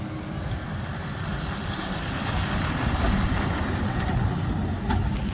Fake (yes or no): no